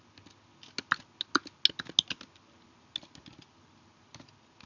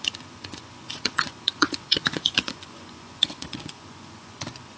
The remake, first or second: second